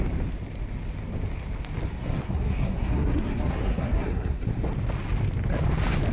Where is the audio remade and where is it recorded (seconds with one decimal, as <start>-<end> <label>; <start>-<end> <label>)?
0.0-1.9 recorded; 1.9-4.6 remade; 4.6-6.1 recorded